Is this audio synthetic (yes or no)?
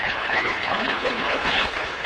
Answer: yes